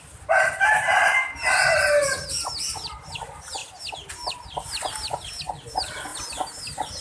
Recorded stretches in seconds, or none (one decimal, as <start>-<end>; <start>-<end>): 0.0-7.0